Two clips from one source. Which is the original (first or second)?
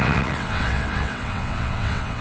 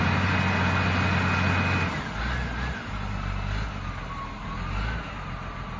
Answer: second